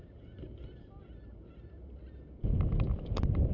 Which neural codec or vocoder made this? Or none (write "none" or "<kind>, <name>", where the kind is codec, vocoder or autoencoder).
none